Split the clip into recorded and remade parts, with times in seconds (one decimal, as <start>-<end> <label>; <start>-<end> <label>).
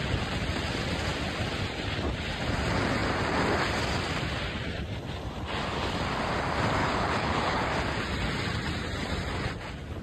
0.0-6.8 recorded; 6.8-7.6 remade; 7.6-10.0 recorded